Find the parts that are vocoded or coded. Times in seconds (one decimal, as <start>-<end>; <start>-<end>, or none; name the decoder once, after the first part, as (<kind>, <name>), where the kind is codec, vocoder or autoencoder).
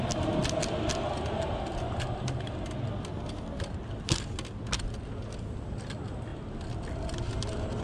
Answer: none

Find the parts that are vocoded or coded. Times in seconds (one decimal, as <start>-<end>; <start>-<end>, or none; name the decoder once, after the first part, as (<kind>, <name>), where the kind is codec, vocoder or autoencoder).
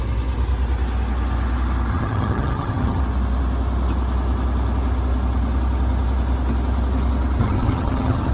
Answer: 1.9-3.0 (vocoder, HiFi-GAN); 7.4-8.3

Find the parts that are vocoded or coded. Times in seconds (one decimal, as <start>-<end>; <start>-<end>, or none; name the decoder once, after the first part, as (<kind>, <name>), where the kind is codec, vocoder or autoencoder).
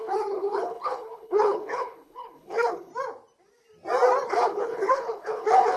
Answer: 0.0-2.9 (codec, HILCodec); 4.3-5.8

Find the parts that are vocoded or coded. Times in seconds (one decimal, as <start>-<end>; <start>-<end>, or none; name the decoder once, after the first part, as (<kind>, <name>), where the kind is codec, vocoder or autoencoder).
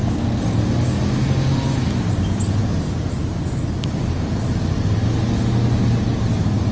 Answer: none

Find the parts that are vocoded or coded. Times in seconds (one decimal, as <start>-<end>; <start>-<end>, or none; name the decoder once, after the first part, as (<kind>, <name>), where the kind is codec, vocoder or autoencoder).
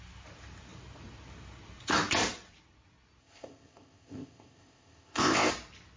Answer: 3.2-5.5 (codec, ZipCodec)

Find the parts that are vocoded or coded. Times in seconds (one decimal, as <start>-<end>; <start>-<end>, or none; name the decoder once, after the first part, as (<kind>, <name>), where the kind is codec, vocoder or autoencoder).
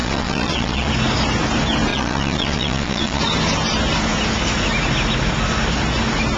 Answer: 0.0-0.9 (vocoder, Vocos); 1.9-3.2